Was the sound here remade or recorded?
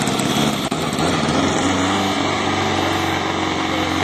recorded